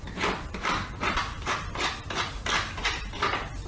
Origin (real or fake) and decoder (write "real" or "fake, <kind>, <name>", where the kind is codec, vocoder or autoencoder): real